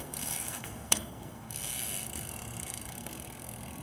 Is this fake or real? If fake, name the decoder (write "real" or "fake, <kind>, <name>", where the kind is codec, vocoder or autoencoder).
fake, codec, SNAC